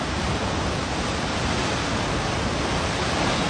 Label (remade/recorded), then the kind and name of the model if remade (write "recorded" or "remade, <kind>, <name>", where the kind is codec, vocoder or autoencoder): recorded